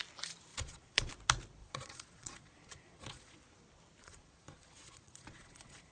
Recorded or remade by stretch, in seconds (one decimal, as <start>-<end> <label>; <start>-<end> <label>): 0.0-0.5 recorded; 0.5-1.1 remade; 1.1-1.6 recorded; 1.6-3.4 remade; 3.4-4.0 recorded; 4.0-5.9 remade